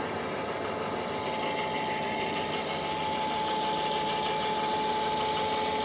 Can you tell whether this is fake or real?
real